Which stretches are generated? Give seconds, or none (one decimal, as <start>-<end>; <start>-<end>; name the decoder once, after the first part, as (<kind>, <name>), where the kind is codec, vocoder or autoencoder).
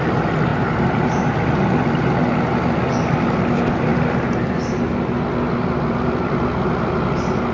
0.5-1.3 (vocoder, BigVGAN v2)